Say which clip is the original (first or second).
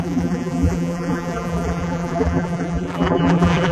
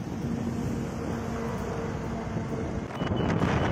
second